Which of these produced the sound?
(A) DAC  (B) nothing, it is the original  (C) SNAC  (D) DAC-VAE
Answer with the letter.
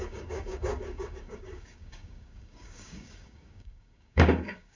A